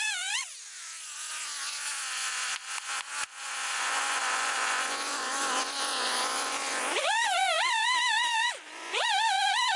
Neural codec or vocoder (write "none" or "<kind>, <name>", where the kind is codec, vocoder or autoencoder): vocoder, Vocos